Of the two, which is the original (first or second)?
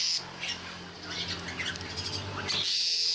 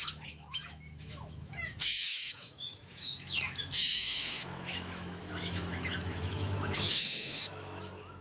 first